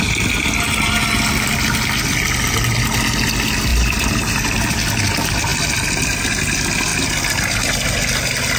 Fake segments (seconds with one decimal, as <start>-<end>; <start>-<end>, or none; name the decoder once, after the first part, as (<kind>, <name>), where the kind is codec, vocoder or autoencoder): 3.7-5.0 (vocoder, BigVGAN v2)